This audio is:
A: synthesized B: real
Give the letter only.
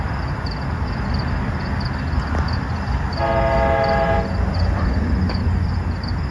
B